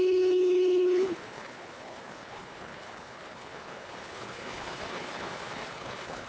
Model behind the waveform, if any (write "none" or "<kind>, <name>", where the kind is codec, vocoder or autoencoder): codec, HILCodec